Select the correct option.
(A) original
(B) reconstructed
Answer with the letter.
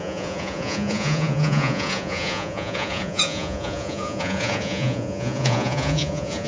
B